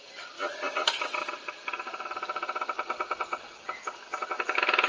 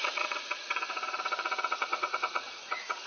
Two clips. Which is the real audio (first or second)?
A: first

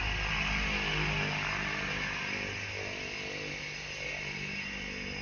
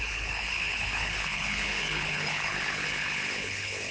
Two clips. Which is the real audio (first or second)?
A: first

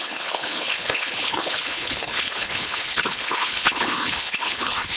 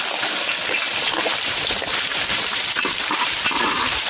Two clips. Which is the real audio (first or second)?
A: second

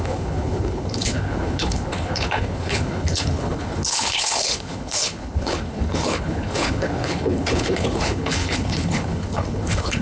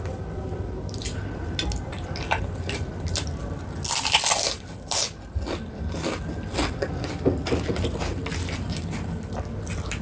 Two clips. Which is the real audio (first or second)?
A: second